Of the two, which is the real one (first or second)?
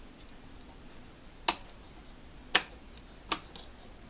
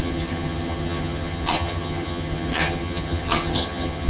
first